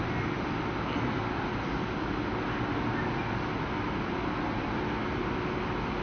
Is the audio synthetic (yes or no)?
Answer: no